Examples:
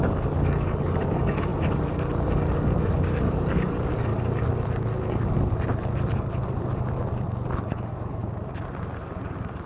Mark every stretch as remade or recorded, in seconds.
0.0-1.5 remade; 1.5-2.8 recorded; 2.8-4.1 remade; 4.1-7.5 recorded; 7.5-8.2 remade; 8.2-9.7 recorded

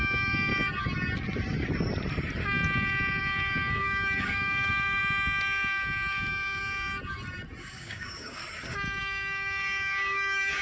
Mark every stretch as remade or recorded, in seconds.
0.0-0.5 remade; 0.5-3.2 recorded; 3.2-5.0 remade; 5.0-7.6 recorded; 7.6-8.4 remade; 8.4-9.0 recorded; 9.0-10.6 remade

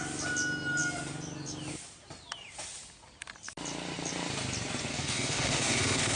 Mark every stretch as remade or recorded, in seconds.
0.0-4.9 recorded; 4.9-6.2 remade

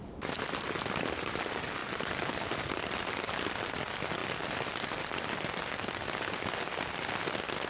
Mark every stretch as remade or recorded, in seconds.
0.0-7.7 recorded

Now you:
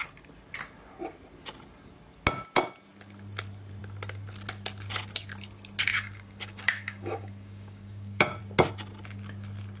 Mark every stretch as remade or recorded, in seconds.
0.0-5.9 recorded; 5.9-8.4 remade; 8.4-9.8 recorded

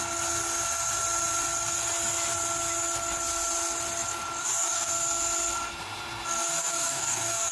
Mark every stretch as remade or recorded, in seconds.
0.0-4.4 recorded; 4.4-4.9 remade; 4.9-6.6 recorded; 6.6-7.5 remade

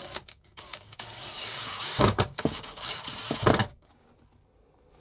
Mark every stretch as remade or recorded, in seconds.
0.0-3.0 remade; 3.0-3.6 recorded; 3.6-4.1 remade; 4.1-5.0 recorded

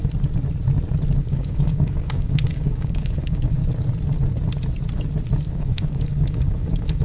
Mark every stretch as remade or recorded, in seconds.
0.0-1.2 recorded; 1.2-3.6 remade; 3.6-5.5 recorded; 5.5-7.0 remade